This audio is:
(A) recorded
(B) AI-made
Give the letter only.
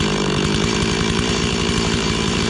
B